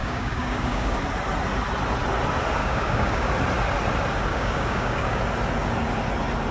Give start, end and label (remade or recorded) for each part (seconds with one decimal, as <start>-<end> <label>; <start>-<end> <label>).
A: 0.0-1.0 remade; 1.0-2.6 recorded; 2.6-3.3 remade; 3.3-4.3 recorded; 4.3-5.2 remade; 5.2-6.5 recorded